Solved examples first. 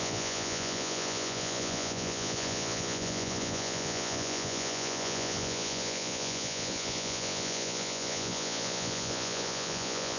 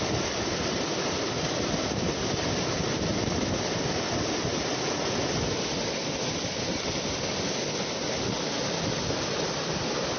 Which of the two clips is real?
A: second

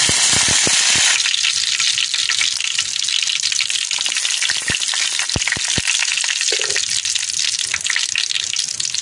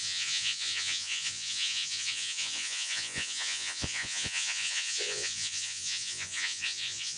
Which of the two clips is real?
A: first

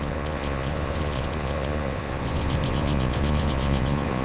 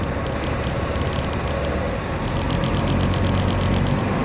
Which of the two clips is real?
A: second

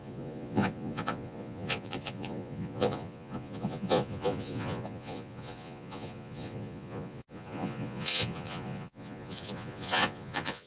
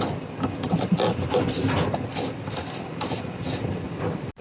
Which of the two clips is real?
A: second